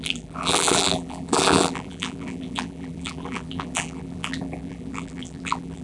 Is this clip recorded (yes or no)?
no